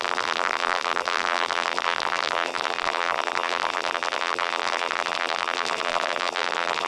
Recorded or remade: remade